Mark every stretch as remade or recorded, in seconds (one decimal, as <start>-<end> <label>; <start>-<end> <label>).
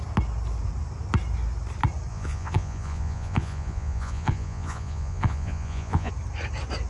0.0-2.1 recorded; 2.1-6.1 remade; 6.1-6.9 recorded